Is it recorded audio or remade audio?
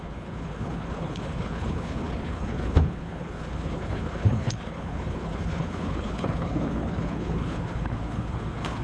remade